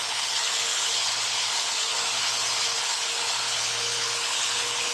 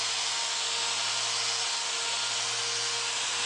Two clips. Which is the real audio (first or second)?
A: second